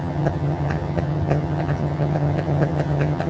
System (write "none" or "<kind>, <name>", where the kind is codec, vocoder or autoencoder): vocoder, HiFi-GAN